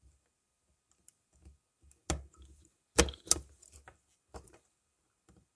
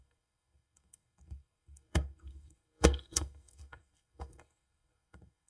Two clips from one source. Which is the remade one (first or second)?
second